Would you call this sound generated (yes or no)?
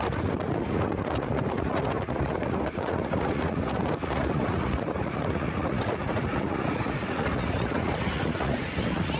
yes